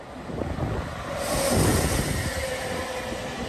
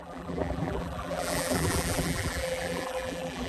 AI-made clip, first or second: second